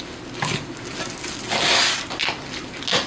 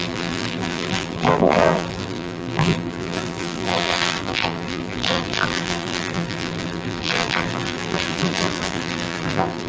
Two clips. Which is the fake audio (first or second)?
second